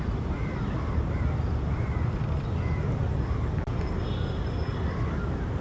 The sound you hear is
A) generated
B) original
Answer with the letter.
B